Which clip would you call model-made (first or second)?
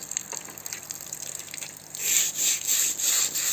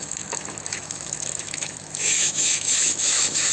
second